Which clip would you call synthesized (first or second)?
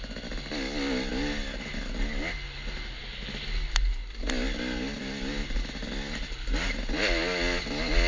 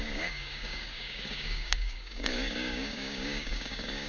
second